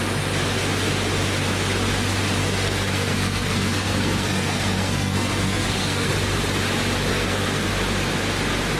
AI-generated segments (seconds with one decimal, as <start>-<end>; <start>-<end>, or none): 2.4-6.1; 7.1-7.7